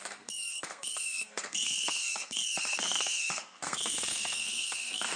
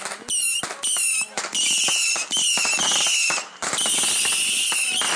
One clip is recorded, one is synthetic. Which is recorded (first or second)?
second